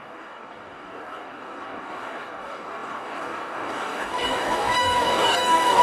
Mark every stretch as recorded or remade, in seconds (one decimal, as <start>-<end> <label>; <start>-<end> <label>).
0.0-5.8 remade